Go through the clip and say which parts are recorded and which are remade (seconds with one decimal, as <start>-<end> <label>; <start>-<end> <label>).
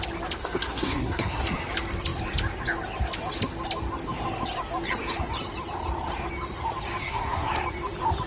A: 0.0-0.4 recorded; 0.4-1.4 remade; 1.4-7.0 recorded; 7.0-7.5 remade; 7.5-8.3 recorded